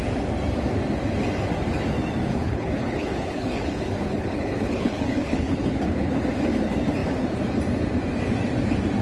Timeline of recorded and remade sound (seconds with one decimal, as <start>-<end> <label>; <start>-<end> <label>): 0.0-2.3 recorded; 2.3-6.2 remade; 6.2-9.0 recorded